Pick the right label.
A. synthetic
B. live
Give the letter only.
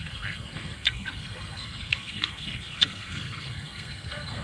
A